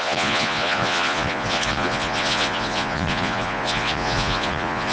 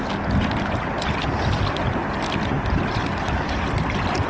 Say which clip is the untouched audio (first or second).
second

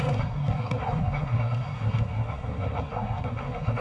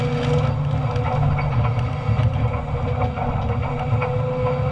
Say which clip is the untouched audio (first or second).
second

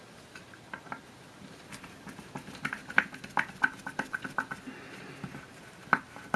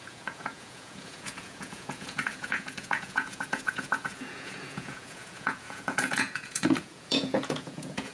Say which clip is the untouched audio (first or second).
first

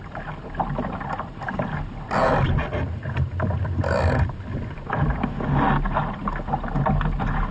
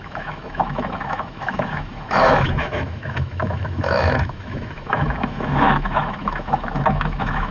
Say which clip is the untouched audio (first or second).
first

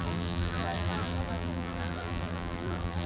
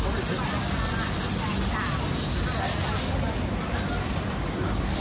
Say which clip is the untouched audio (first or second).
second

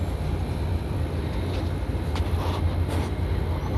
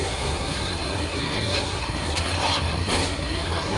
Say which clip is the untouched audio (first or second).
first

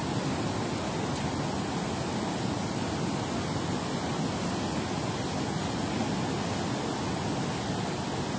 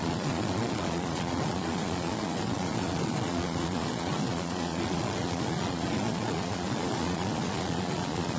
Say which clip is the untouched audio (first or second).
first